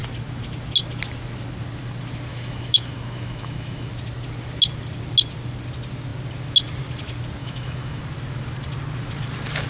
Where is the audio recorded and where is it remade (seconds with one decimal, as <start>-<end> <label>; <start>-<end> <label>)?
0.0-2.3 recorded; 2.3-3.9 remade; 3.9-7.4 recorded; 7.4-8.0 remade; 8.0-9.7 recorded